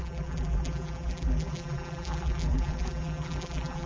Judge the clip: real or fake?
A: fake